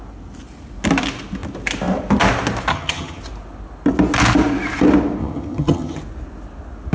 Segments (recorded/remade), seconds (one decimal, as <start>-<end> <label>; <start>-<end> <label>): 0.0-2.7 recorded; 2.7-3.2 remade; 3.2-5.2 recorded; 5.2-6.0 remade; 6.0-6.9 recorded